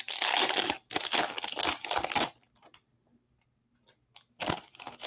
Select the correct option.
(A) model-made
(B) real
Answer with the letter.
B